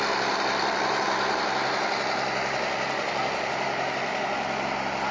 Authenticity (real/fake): fake